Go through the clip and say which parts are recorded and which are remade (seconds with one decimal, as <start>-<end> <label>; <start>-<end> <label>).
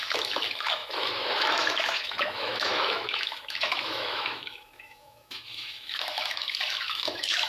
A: 0.0-7.5 remade